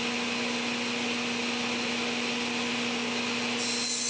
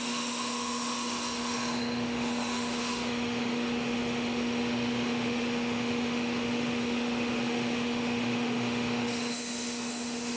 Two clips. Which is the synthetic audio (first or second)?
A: second